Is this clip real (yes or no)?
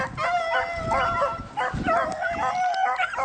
yes